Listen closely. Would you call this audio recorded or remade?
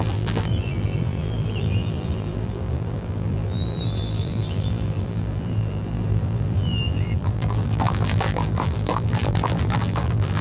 remade